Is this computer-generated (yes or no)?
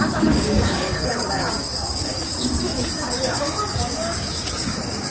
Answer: yes